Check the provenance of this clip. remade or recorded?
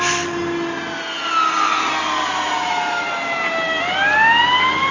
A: recorded